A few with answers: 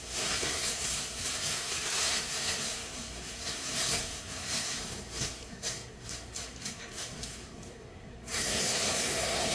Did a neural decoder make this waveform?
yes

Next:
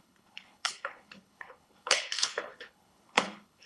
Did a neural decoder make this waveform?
yes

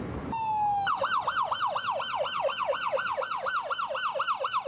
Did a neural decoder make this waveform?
no